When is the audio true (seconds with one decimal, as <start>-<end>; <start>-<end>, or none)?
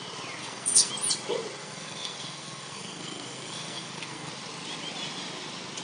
0.0-0.4; 0.9-1.6; 4.3-5.8